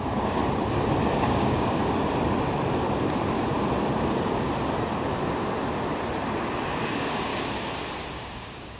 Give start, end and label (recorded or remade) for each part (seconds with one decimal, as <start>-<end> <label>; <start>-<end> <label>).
0.0-0.4 remade; 0.4-1.2 recorded; 1.2-1.8 remade; 1.8-6.8 recorded; 6.8-7.3 remade; 7.3-8.1 recorded; 8.1-8.8 remade